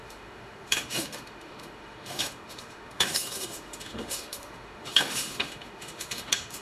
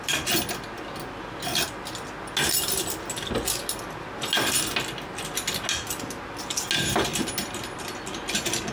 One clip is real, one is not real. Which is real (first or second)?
second